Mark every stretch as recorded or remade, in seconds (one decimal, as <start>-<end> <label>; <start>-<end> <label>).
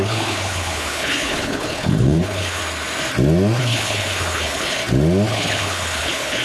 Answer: 0.0-2.6 remade; 2.6-3.6 recorded; 3.6-4.8 remade; 4.8-5.3 recorded; 5.3-6.4 remade